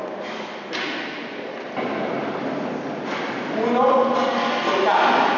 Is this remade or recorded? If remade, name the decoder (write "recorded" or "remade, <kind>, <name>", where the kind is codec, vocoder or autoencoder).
recorded